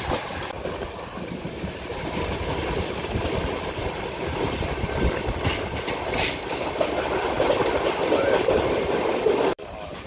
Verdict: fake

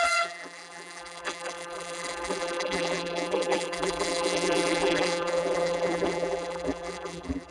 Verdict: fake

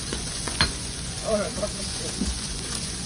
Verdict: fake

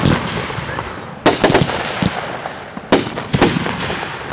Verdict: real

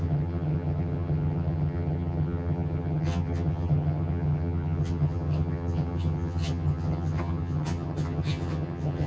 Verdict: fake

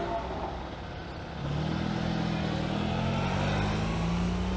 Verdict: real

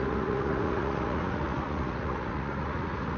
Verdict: fake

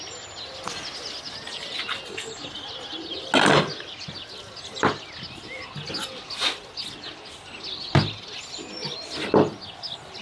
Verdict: real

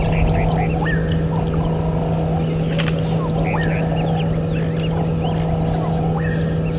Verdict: real